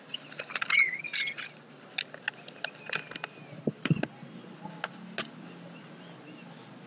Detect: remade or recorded recorded